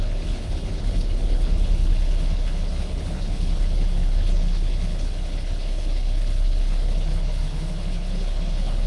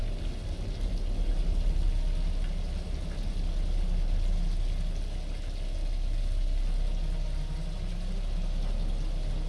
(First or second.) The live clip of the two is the second